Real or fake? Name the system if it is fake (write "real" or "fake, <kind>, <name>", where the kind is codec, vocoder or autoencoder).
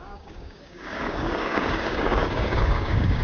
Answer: fake, codec, DAC